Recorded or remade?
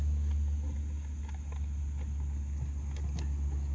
recorded